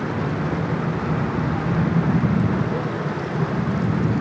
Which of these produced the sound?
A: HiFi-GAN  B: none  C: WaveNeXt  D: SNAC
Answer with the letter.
B